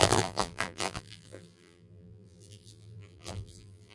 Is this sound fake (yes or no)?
yes